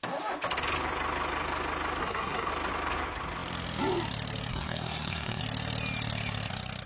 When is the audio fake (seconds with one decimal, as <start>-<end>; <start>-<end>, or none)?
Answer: 2.0-2.5; 4.5-5.4